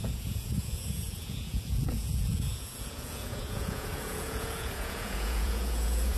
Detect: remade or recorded remade